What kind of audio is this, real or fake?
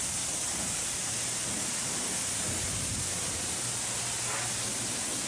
real